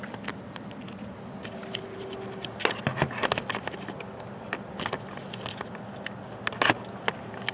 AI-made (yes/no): no